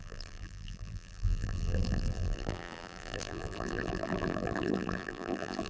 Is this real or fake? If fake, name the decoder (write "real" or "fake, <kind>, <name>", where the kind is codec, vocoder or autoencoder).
fake, vocoder, BigVGAN v2